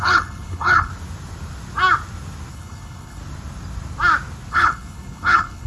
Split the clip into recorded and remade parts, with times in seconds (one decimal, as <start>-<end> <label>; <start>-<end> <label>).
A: 0.0-0.9 remade; 0.9-2.5 recorded; 2.5-3.2 remade; 3.2-4.5 recorded; 4.5-5.7 remade

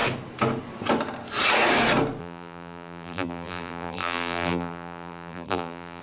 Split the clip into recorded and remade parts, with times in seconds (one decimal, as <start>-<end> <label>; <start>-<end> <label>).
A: 0.0-2.2 recorded; 2.2-6.0 remade

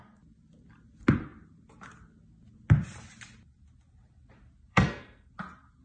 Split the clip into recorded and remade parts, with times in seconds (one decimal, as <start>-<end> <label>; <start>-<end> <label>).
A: 0.0-4.7 recorded; 4.7-5.3 remade; 5.3-5.8 recorded

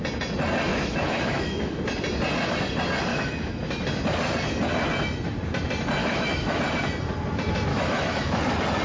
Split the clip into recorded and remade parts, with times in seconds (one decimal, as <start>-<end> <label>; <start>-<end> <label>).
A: 0.0-0.7 recorded; 0.7-1.8 remade; 1.8-3.1 recorded; 3.1-3.7 remade; 3.7-6.0 recorded; 6.0-6.6 remade; 6.6-7.7 recorded; 7.7-8.4 remade; 8.4-8.8 recorded

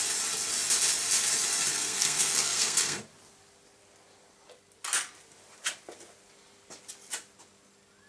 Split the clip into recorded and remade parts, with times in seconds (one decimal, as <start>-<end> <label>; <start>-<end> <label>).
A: 0.0-1.7 recorded; 1.7-3.0 remade; 3.0-8.1 recorded

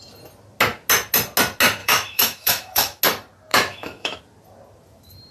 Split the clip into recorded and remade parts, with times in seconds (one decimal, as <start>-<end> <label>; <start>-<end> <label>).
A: 0.0-1.8 recorded; 1.8-3.0 remade; 3.0-3.5 recorded; 3.5-4.2 remade; 4.2-5.3 recorded